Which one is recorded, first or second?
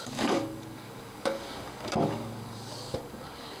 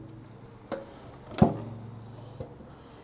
second